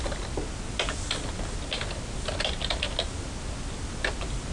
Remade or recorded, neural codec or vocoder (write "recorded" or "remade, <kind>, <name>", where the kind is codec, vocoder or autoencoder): recorded